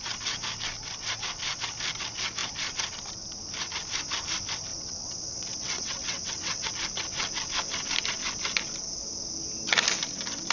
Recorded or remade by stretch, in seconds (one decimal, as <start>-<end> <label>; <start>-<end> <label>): 0.0-4.7 recorded; 4.7-6.7 remade; 6.7-10.5 recorded